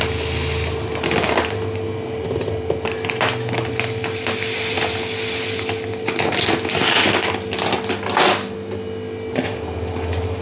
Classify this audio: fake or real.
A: real